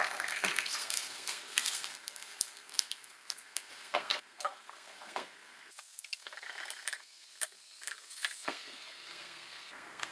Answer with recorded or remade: remade